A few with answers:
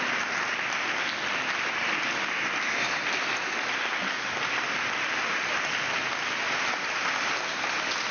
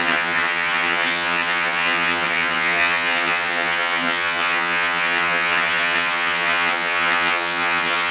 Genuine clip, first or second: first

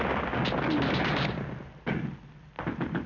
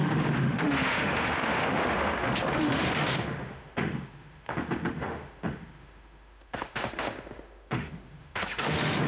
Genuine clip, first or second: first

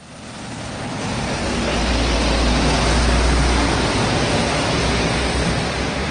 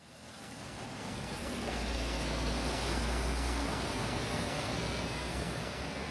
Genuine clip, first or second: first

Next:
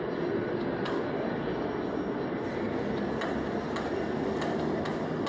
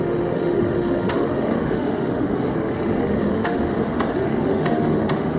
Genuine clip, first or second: first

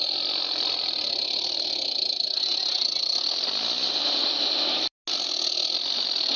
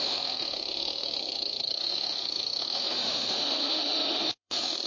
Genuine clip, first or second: first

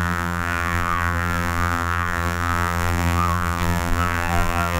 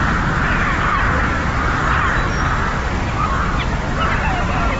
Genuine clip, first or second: second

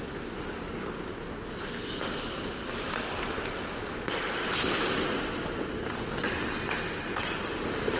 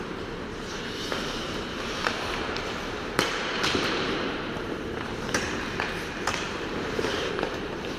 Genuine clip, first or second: first